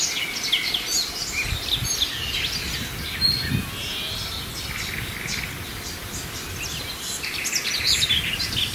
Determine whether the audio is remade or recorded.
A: recorded